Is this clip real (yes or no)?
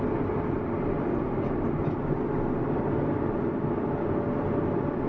yes